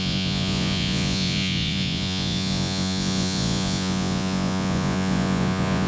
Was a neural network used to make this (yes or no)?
yes